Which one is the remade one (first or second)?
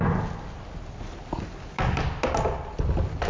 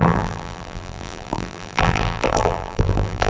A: second